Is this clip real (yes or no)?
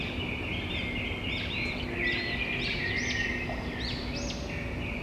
yes